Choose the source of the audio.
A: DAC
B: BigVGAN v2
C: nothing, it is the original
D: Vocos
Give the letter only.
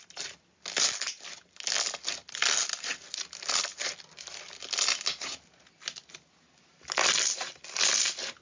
C